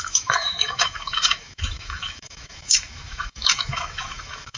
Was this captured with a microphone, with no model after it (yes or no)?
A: no